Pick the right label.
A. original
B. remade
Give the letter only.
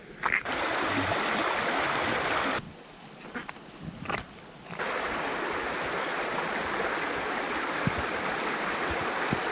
A